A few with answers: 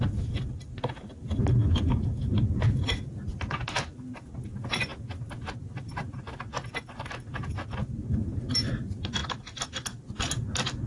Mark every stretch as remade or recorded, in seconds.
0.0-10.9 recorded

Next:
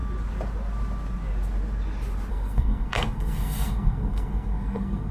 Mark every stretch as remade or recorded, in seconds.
0.0-2.3 recorded; 2.3-5.1 remade

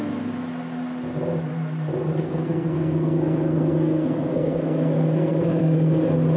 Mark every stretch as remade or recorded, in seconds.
0.0-2.2 recorded; 2.2-6.0 remade; 6.0-6.4 recorded

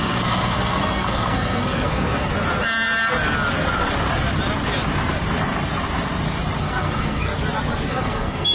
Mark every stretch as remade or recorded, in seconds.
0.0-2.3 remade; 2.3-6.6 recorded; 6.6-7.3 remade; 7.3-7.9 recorded; 7.9-8.5 remade

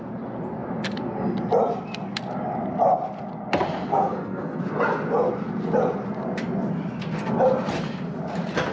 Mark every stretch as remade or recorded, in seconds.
0.0-3.9 recorded; 3.9-4.6 remade; 4.6-8.7 recorded

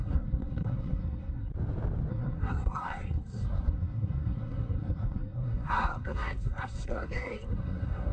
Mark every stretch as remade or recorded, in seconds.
0.0-1.5 remade; 1.5-2.1 recorded; 2.1-8.1 remade

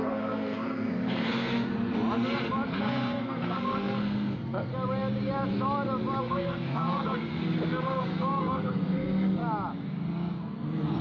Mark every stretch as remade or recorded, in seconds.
0.0-1.7 remade; 1.7-2.8 recorded; 2.8-4.7 remade; 4.7-6.2 recorded; 6.2-9.4 remade; 9.4-10.4 recorded; 10.4-11.0 remade

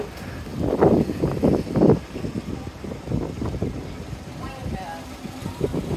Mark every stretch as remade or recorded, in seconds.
0.0-6.0 recorded